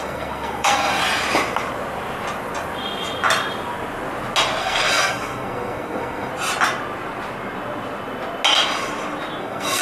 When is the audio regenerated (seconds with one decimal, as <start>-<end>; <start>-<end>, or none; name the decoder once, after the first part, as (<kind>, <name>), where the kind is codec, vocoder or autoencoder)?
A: 0.0-1.0 (codec, SNAC); 4.6-6.3; 9.4-9.8